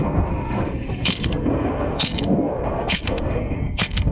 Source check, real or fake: fake